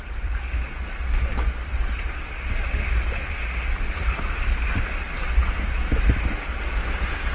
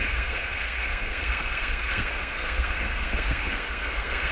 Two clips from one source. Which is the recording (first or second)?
first